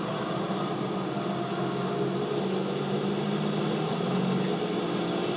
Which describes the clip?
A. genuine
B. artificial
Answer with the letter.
A